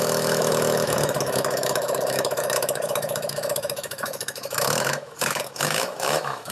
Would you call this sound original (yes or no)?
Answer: no